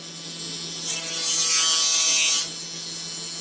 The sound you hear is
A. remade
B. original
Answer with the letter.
B